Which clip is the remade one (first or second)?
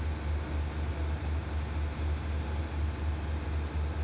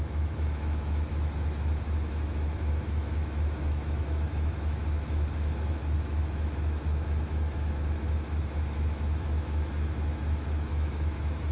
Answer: second